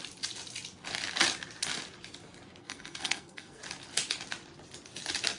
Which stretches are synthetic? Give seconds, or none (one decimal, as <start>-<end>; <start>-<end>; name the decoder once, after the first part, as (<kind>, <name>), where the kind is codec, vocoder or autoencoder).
2.6-3.6 (codec, SNAC)